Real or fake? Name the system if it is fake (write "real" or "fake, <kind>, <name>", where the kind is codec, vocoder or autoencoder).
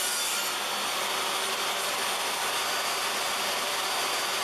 real